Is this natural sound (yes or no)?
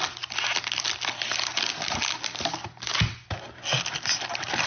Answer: yes